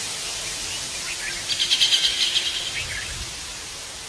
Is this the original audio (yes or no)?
yes